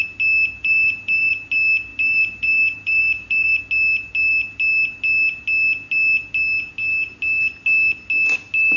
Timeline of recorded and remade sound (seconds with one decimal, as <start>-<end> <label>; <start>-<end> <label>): 0.0-0.6 recorded; 0.6-1.3 remade; 1.3-1.9 recorded; 1.9-3.6 remade; 3.6-8.8 recorded